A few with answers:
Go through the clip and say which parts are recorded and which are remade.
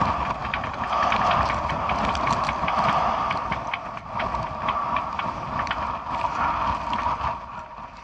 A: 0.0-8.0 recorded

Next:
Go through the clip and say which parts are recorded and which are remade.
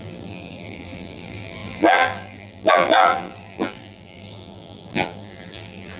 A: 0.0-6.0 remade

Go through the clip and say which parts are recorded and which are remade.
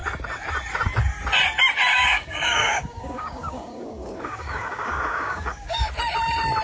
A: 0.0-1.9 recorded; 1.9-5.9 remade; 5.9-6.6 recorded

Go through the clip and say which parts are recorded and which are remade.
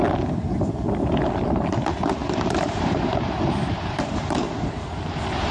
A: 0.0-2.2 recorded; 2.2-5.5 remade